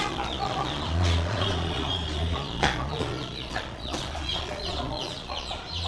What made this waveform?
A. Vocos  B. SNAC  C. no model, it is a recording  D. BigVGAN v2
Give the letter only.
A